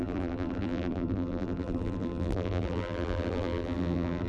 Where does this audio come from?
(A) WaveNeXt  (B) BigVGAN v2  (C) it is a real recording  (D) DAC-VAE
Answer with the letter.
B